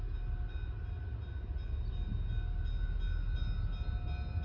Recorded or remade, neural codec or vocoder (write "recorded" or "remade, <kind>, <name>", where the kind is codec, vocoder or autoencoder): recorded